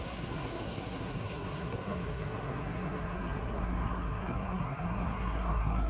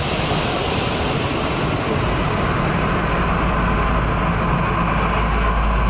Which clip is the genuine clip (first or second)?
second